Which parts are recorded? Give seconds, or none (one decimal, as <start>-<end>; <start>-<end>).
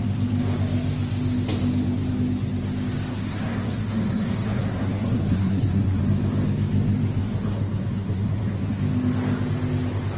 0.0-3.1; 6.0-7.2; 8.8-10.2